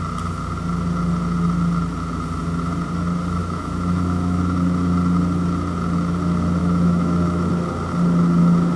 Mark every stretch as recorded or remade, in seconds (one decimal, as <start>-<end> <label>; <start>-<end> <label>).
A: 0.0-3.4 recorded; 3.4-4.4 remade; 4.4-6.6 recorded; 6.6-7.5 remade; 7.5-8.8 recorded